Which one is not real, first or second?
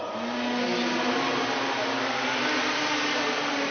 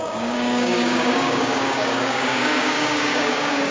second